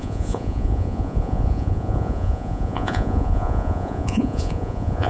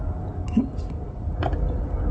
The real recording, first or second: second